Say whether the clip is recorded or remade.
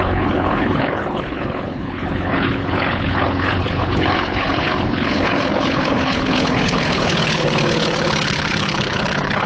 remade